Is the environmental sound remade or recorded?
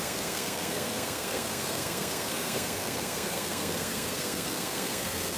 remade